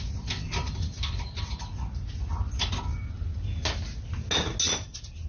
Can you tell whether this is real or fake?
real